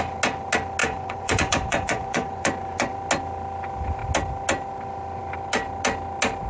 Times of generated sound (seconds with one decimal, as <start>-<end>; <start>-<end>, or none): 0.8-2.9